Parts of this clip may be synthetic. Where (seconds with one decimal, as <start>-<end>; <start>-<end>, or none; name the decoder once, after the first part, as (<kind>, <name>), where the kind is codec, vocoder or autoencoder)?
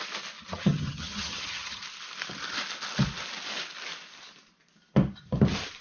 0.4-1.8 (vocoder, HiFi-GAN)